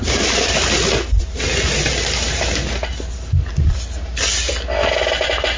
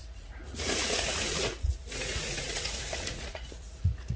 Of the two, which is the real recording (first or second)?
first